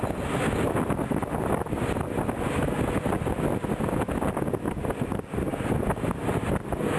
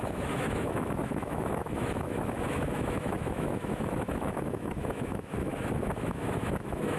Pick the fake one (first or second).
second